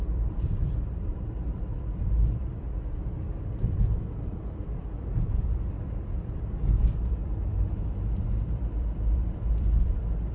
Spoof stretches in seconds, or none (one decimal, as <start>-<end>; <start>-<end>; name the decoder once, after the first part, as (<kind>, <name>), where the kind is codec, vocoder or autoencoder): 0.0-10.3 (vocoder, BigVGAN v2)